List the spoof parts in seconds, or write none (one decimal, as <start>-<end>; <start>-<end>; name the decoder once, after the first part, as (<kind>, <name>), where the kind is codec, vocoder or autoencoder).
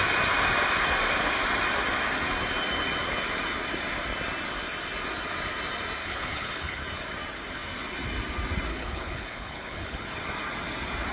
6.0-6.8 (codec, HILCodec); 8.7-10.0